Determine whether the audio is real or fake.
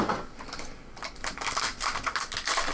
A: real